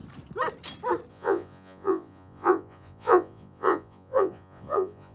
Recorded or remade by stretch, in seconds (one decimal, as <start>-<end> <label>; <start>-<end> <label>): 0.0-1.1 recorded; 1.1-5.1 remade